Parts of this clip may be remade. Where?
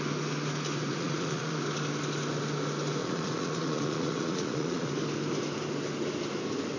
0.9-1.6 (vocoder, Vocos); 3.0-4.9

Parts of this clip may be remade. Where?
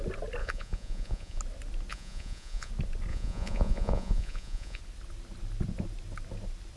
0.4-1.4 (vocoder, Vocos); 1.9-2.7; 3.1-4.8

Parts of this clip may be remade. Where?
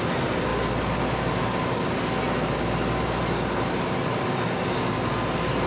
none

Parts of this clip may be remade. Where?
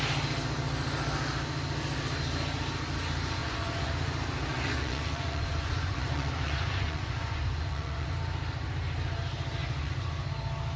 3.4-3.9 (vocoder, Vocos); 4.5-8.1; 9.6-10.3